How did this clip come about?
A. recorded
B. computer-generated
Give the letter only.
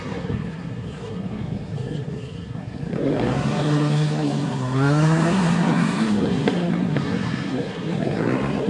B